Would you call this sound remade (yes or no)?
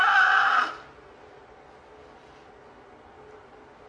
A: no